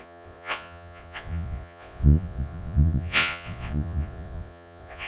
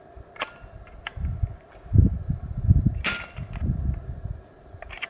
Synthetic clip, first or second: first